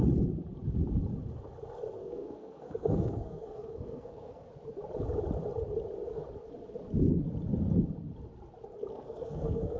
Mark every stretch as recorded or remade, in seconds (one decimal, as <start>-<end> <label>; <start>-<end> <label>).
0.0-2.0 recorded; 2.0-4.5 remade; 4.5-8.9 recorded; 8.9-9.8 remade